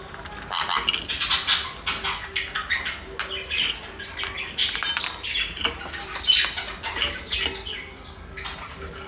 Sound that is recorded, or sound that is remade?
recorded